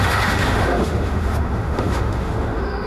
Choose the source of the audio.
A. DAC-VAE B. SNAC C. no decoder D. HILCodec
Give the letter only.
A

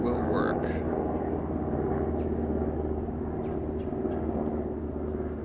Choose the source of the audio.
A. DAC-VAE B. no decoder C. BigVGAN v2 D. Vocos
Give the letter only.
B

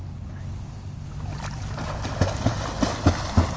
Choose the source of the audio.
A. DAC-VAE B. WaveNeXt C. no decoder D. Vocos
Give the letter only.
C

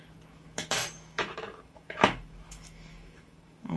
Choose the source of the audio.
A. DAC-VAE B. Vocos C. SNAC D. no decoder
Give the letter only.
A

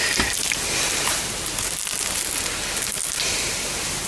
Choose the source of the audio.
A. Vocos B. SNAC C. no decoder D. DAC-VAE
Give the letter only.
C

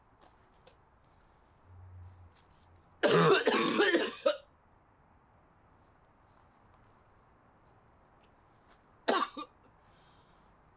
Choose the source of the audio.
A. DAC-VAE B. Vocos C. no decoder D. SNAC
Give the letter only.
C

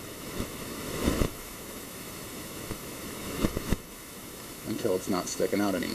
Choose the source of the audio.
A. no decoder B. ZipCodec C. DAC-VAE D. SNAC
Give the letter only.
C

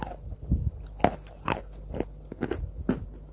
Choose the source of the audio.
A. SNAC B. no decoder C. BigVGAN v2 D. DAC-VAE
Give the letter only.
B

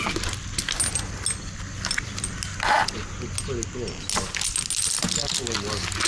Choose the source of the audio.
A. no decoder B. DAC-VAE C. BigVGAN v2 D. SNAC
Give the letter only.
A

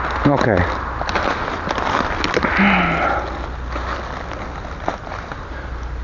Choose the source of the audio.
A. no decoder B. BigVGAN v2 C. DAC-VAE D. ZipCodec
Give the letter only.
A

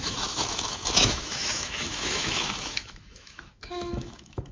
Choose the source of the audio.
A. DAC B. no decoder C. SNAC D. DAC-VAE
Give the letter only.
D